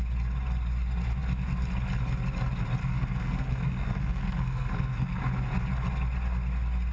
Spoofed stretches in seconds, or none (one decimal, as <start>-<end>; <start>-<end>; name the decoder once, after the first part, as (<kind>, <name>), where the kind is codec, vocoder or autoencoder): 2.8-5.2 (codec, SNAC)